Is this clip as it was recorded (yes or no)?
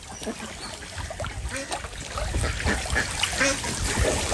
yes